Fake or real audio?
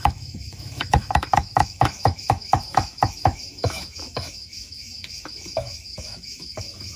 fake